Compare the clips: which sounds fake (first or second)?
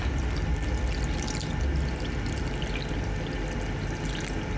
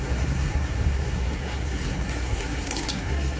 second